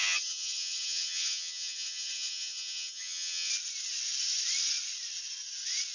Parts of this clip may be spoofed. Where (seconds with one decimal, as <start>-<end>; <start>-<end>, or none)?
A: 0.0-3.5